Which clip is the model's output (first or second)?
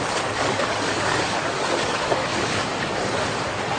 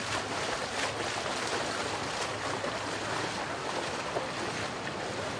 first